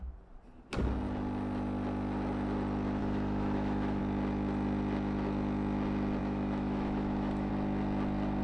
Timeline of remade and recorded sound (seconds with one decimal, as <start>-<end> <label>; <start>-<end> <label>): 0.0-3.0 recorded; 3.0-4.0 remade; 4.0-6.2 recorded; 6.2-7.5 remade; 7.5-8.4 recorded